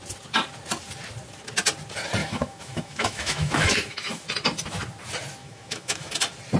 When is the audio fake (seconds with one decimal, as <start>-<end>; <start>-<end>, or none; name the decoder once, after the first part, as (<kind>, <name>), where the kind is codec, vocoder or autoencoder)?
2.2-4.2 (autoencoder, DAC-VAE); 5.4-6.1